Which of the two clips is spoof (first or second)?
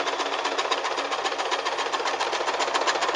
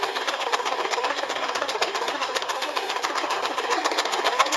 second